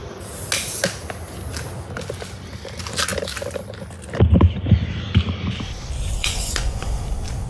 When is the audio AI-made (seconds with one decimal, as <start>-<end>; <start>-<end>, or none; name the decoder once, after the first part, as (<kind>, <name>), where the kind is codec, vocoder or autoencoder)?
6.2-7.0 (vocoder, Vocos)